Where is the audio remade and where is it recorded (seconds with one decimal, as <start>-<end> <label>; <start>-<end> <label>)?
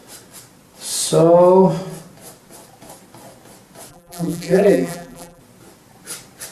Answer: 0.0-3.9 recorded; 3.9-5.4 remade; 5.4-6.5 recorded